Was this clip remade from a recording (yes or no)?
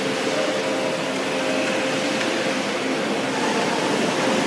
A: no